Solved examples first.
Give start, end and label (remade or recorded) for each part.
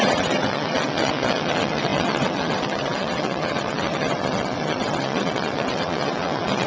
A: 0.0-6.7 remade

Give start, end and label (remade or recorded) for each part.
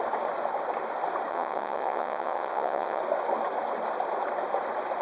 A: 0.0-1.3 recorded; 1.3-3.0 remade; 3.0-5.0 recorded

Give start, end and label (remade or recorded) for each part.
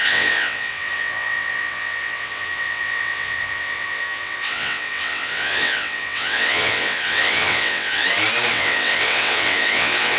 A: 0.0-8.0 remade; 8.0-8.5 recorded; 8.5-10.2 remade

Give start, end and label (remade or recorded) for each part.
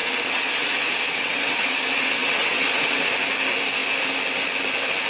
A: 0.0-3.1 remade; 3.1-5.1 recorded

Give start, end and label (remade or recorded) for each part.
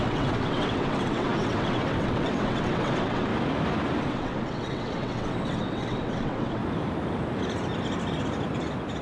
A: 0.0-3.3 remade; 3.3-4.0 recorded; 4.0-6.6 remade; 6.6-9.0 recorded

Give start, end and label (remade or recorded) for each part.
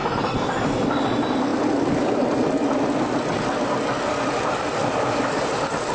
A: 0.0-5.9 recorded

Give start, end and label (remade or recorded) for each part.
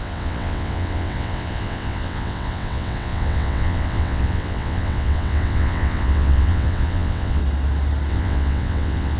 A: 0.0-7.4 remade; 7.4-8.1 recorded; 8.1-9.2 remade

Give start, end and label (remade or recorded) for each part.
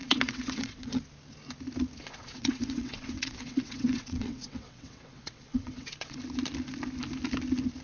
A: 0.0-1.0 remade; 1.0-2.0 recorded; 2.0-6.2 remade; 6.2-7.8 recorded